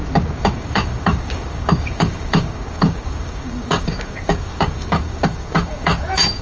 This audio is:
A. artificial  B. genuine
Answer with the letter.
A